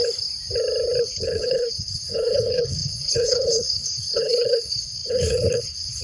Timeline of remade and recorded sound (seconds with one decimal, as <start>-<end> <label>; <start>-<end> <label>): 0.0-1.0 recorded; 1.0-6.0 remade